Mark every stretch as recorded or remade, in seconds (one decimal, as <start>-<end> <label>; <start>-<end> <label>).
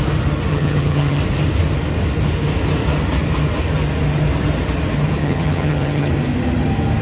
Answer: 0.0-0.5 recorded; 0.5-1.2 remade; 1.2-5.2 recorded; 5.2-6.1 remade; 6.1-7.0 recorded